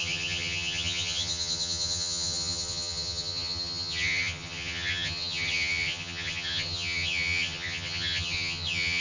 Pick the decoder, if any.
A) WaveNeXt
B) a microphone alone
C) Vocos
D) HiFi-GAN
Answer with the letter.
D